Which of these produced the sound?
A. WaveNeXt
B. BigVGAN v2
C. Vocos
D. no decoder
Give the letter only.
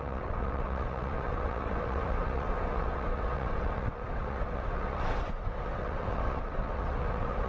A